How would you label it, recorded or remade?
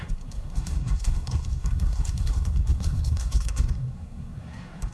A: remade